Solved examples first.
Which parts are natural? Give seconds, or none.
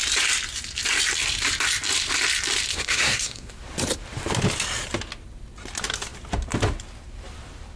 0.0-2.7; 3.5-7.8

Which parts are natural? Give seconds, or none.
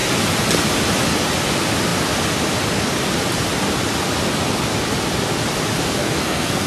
0.0-6.0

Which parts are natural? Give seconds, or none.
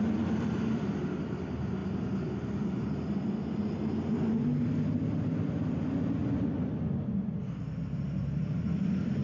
0.0-9.2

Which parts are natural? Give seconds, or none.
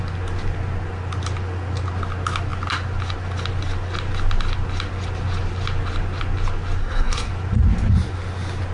0.0-6.8; 7.3-8.7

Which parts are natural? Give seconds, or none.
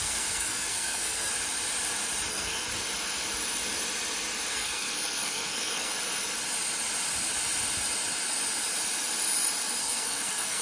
1.3-2.3; 2.7-4.5; 5.9-9.8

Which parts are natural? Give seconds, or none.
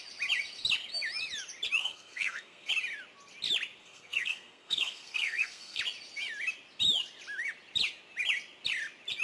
0.0-1.8; 2.7-3.8; 5.8-9.2